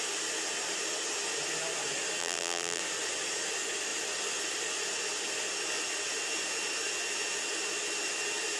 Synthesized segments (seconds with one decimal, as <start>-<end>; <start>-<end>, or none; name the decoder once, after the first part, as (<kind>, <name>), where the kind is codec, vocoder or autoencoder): 2.2-2.8 (vocoder, BigVGAN v2)